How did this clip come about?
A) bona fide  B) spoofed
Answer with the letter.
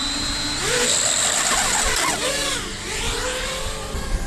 A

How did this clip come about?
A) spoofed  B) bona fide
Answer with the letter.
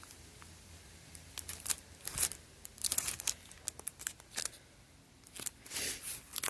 B